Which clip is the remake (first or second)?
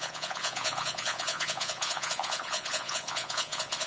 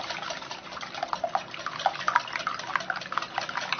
first